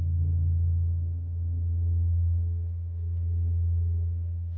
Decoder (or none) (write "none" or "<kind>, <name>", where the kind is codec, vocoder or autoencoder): codec, SNAC